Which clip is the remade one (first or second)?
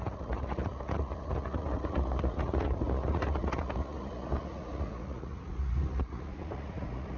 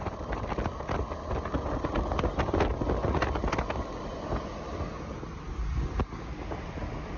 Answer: first